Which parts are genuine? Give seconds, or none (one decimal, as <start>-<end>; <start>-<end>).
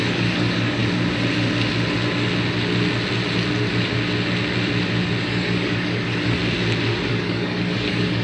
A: 0.8-5.2; 6.4-7.1